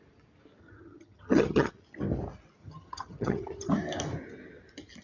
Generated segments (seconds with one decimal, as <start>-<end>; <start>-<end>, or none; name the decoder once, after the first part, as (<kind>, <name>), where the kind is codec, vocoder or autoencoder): 0.6-1.7 (vocoder, HiFi-GAN); 2.6-3.7